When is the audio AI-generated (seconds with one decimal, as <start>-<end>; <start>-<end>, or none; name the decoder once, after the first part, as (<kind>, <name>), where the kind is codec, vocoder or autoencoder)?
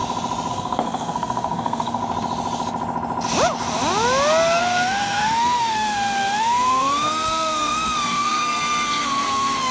0.5-2.0 (codec, SNAC); 4.6-9.7